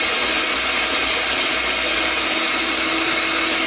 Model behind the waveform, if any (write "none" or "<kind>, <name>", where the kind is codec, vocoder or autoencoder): none